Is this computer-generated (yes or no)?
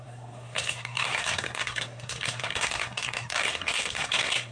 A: yes